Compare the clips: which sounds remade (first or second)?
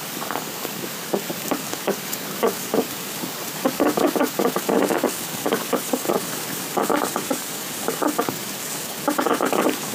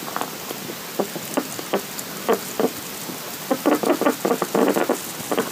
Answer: first